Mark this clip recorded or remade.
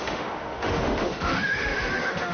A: remade